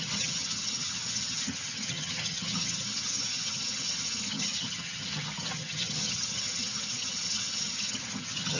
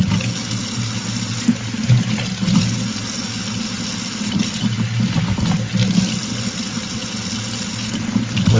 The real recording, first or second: second